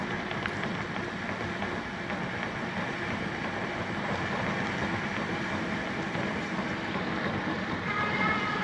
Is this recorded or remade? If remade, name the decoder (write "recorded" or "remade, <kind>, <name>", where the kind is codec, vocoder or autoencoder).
recorded